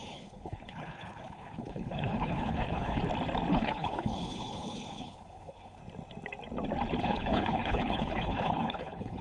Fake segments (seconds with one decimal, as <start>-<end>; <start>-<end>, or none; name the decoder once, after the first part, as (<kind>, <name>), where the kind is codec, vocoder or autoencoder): 0.0-3.0 (codec, HILCodec); 3.5-5.8; 7.0-9.2